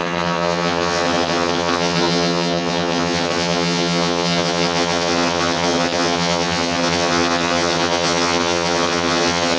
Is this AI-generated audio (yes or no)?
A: yes